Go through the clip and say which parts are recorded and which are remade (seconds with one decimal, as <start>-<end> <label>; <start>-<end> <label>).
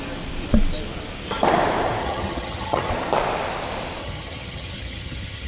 0.0-2.0 recorded; 2.0-2.9 remade; 2.9-4.0 recorded; 4.0-5.5 remade